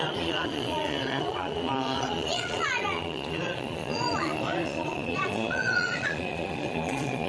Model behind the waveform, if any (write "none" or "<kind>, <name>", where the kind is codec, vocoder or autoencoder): vocoder, Vocos